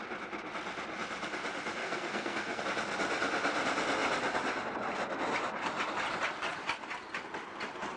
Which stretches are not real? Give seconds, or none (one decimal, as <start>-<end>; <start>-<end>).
1.8-2.6

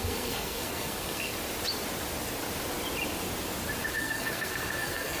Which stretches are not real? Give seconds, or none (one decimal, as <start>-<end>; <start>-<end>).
0.0-1.3; 3.9-5.2

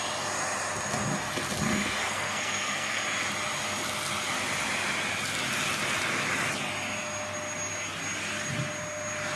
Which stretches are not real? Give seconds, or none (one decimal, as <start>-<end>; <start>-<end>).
2.0-3.0

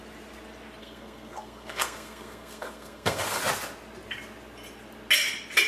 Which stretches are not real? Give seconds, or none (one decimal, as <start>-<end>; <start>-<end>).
0.8-3.4

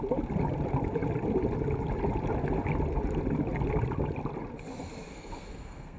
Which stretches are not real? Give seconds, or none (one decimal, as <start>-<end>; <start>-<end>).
5.1-6.0

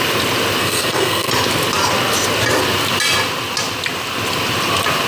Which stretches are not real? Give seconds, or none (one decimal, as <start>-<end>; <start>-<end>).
0.6-1.3

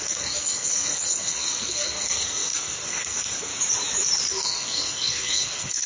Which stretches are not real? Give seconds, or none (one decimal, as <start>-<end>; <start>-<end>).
0.0-3.5; 4.3-5.9